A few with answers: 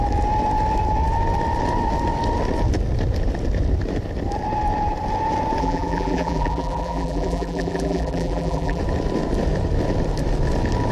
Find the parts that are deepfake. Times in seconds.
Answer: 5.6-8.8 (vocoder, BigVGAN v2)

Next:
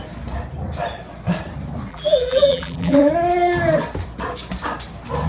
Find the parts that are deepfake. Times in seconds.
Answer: 1.9-3.1 (vocoder, BigVGAN v2)

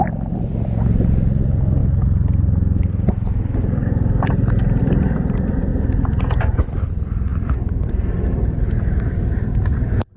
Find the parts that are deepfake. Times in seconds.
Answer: 0.0-1.8 (vocoder, BigVGAN v2); 4.8-10.2

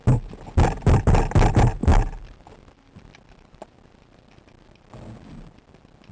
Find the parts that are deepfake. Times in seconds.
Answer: none

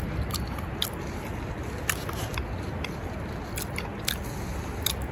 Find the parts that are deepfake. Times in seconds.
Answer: none

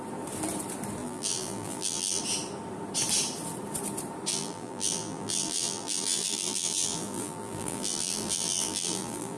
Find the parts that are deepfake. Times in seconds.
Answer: 1.0-2.2 (vocoder, BigVGAN v2); 4.3-9.4